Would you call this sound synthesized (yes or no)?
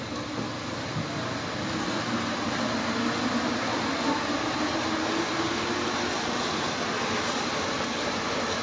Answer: no